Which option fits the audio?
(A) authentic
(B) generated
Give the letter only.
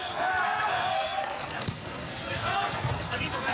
B